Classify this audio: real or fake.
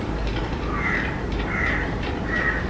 real